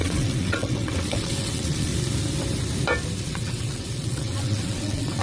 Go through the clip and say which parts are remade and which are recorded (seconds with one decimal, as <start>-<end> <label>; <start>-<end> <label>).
0.0-1.9 remade; 1.9-3.2 recorded; 3.2-5.2 remade